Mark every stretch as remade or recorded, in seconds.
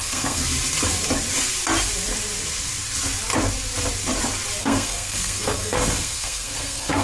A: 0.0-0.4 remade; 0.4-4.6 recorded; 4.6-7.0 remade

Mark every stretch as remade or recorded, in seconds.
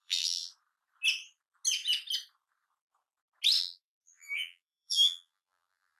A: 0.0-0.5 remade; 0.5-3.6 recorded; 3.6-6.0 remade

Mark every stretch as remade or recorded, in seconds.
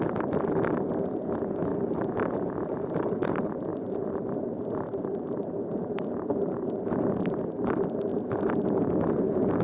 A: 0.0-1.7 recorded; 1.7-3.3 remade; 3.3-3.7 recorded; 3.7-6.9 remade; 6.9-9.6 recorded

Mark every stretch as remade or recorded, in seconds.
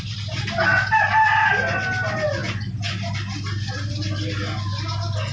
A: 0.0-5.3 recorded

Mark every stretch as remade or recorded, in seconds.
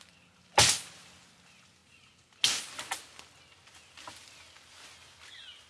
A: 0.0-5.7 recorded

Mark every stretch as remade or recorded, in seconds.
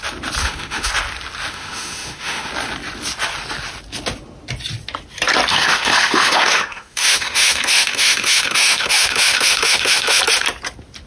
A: 0.0-0.4 recorded; 0.4-0.9 remade; 0.9-1.5 recorded; 1.5-2.5 remade; 2.5-5.5 recorded; 5.5-10.2 remade; 10.2-11.1 recorded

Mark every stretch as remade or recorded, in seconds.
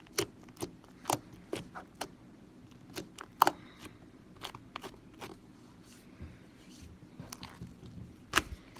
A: 0.0-8.8 recorded